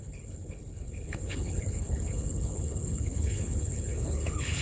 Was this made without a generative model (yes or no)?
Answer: no